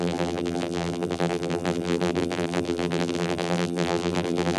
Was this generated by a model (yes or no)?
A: yes